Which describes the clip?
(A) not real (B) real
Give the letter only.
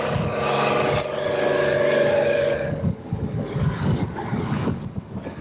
A